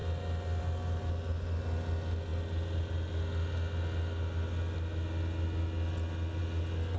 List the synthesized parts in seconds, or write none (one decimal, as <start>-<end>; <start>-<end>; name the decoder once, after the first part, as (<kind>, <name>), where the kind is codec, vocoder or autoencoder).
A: none